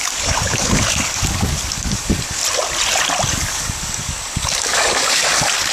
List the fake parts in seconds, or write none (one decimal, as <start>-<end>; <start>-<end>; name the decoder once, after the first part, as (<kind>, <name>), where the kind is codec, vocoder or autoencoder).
0.0-2.4 (codec, DAC); 3.3-5.7